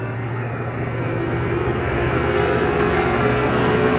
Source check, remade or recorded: remade